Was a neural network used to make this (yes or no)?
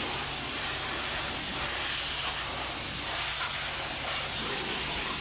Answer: no